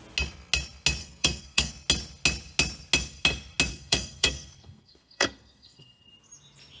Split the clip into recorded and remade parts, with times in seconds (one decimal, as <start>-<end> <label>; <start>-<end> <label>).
0.0-1.0 recorded; 1.0-1.7 remade; 1.7-3.7 recorded; 3.7-6.1 remade; 6.1-6.8 recorded